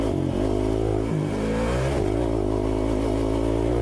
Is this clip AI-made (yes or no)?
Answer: no